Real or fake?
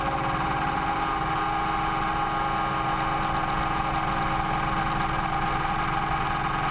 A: real